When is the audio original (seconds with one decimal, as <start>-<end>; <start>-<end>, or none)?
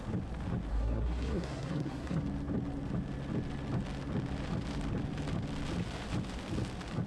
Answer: 0.0-0.7; 2.2-7.1